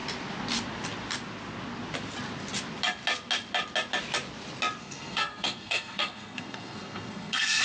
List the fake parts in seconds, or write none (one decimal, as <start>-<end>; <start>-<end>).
4.8-7.6